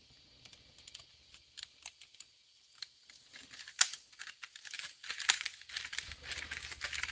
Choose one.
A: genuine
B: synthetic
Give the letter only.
A